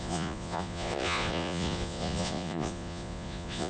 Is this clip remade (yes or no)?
yes